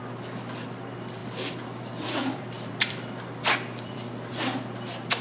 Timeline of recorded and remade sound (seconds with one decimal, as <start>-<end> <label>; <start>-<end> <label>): 0.0-1.2 recorded; 1.2-4.3 remade; 4.3-5.2 recorded